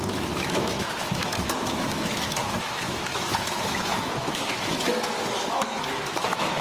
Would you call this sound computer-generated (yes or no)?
yes